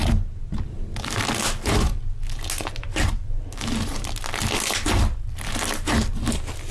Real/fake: real